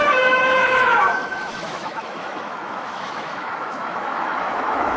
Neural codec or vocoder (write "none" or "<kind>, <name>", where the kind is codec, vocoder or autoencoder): autoencoder, DAC-VAE